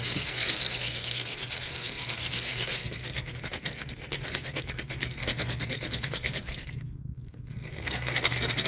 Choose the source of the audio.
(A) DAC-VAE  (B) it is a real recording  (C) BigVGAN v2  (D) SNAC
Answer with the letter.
D